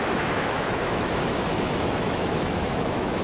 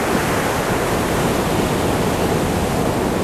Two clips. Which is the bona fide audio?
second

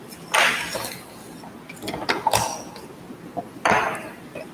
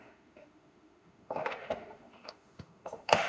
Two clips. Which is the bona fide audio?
first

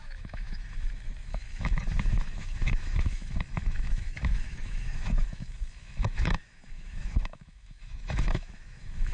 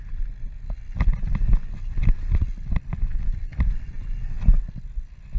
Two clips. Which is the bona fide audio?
second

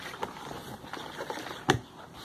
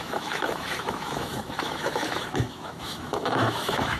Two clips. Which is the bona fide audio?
first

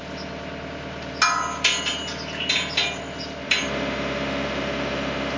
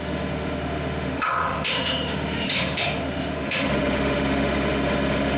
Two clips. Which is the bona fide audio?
first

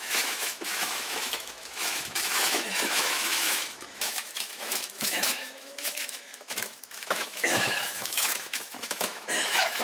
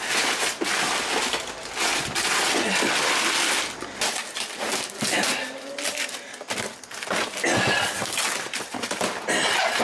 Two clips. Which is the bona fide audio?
second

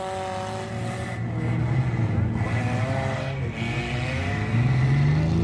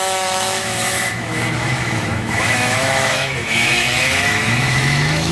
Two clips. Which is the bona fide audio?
first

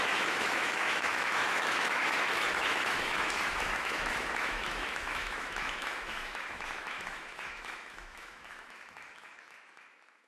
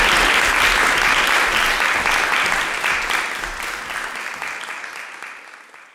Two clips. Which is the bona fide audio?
second